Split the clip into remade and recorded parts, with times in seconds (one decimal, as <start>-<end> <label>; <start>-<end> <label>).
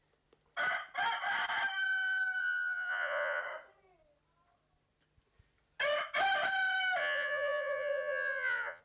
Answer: 0.0-2.4 recorded; 2.4-3.4 remade; 3.4-7.0 recorded; 7.0-8.8 remade